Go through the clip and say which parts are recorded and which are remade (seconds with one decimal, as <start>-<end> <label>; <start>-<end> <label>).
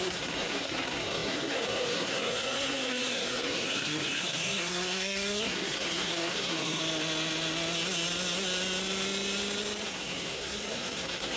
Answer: 0.0-6.8 remade; 6.8-9.8 recorded; 9.8-11.4 remade